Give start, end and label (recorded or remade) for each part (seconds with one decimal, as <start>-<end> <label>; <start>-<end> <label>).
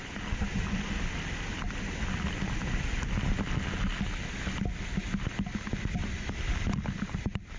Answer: 0.0-6.0 recorded; 6.0-6.5 remade; 6.5-7.6 recorded